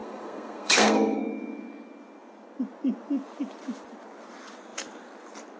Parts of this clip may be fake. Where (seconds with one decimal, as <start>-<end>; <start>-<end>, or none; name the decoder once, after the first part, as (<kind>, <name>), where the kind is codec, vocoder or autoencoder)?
0.0-1.2 (codec, SNAC)